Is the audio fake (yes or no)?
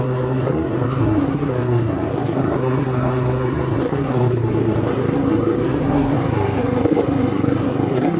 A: yes